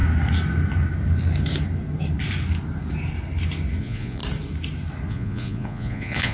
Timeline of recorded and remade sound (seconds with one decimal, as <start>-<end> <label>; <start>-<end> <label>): 0.0-3.8 recorded; 3.8-4.2 remade; 4.2-5.1 recorded; 5.1-6.3 remade